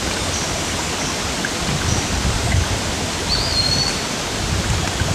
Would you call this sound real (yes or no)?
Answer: yes